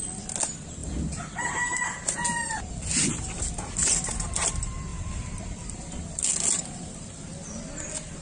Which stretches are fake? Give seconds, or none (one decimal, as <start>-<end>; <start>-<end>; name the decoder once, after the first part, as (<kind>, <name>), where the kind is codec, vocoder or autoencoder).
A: 0.8-3.4 (vocoder, BigVGAN v2); 4.9-6.7